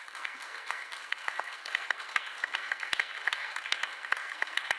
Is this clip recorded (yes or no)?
no